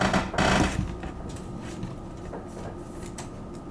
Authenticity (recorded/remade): recorded